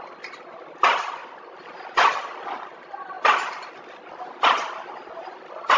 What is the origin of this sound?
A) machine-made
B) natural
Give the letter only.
B